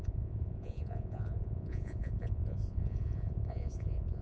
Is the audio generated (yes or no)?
yes